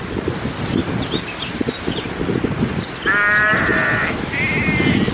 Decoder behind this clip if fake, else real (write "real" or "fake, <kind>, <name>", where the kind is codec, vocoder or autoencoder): real